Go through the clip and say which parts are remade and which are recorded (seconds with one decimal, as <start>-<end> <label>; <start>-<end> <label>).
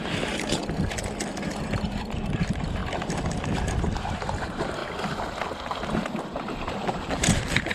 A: 0.0-0.6 remade; 0.6-1.9 recorded; 1.9-2.8 remade; 2.8-4.1 recorded; 4.1-4.8 remade; 4.8-5.6 recorded; 5.6-7.7 remade